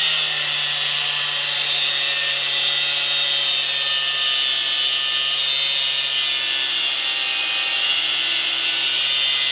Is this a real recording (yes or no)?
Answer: yes